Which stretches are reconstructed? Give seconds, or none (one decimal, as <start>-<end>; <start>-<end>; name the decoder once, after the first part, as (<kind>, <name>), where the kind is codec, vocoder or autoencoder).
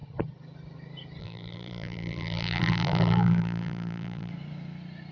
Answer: 1.2-4.3 (vocoder, BigVGAN v2)